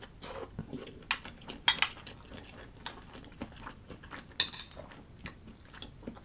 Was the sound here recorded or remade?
recorded